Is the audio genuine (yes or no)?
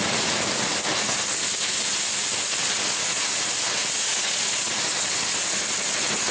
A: yes